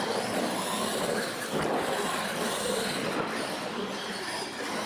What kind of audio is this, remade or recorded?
recorded